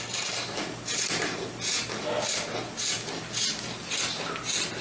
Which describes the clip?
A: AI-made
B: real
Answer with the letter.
B